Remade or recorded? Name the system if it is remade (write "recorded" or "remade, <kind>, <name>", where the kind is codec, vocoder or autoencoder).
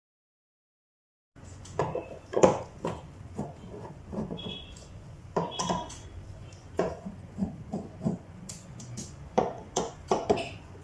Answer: remade, vocoder, Vocos